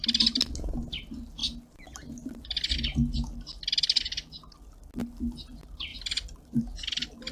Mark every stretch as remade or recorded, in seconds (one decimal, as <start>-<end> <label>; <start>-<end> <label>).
0.0-5.9 recorded; 5.9-6.6 remade; 6.6-7.3 recorded